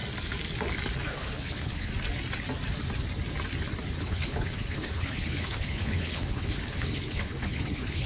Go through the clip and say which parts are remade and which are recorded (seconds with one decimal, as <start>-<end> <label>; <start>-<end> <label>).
0.0-1.1 recorded; 1.1-1.9 remade; 1.9-4.0 recorded; 4.0-8.1 remade